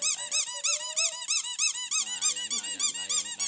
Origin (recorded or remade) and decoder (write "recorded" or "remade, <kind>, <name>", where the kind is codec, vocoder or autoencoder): recorded